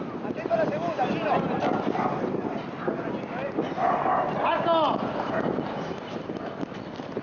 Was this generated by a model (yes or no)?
no